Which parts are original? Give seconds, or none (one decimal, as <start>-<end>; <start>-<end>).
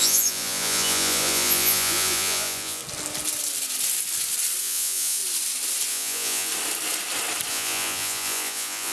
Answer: 2.8-4.6; 5.2-5.9; 6.5-7.5